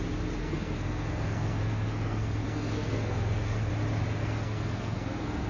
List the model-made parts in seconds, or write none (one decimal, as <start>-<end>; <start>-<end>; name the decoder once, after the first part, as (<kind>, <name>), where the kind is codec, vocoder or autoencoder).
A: 0.4-3.7 (codec, SNAC); 4.2-5.5